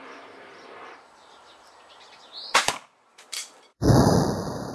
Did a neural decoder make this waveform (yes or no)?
yes